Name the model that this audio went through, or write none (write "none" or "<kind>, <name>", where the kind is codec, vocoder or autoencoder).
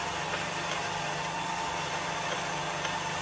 vocoder, BigVGAN v2